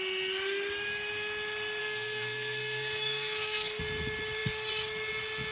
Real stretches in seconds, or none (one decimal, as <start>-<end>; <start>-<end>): 0.0-1.8; 3.8-5.5